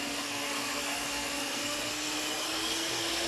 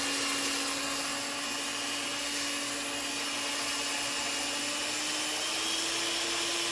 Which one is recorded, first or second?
second